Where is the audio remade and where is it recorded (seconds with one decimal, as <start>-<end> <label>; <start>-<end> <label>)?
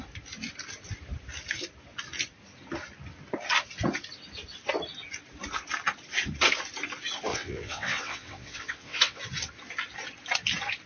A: 0.0-7.3 recorded; 7.3-9.2 remade; 9.2-10.9 recorded